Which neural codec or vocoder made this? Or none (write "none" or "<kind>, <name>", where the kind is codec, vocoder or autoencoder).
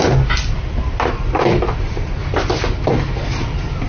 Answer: vocoder, BigVGAN v2